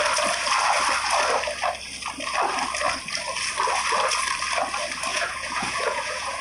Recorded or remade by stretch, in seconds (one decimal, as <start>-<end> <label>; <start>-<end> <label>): 0.0-5.1 recorded; 5.1-6.4 remade